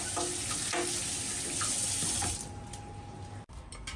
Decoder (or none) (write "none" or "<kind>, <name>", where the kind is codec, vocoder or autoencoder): none